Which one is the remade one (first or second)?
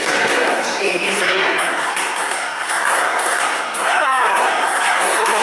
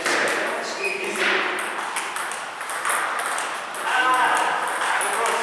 first